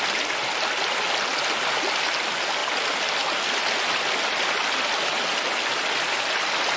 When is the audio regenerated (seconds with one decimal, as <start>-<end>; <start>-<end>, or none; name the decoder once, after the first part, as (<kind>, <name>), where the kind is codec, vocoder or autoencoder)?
none